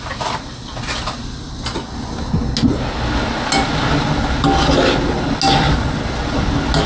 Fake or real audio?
real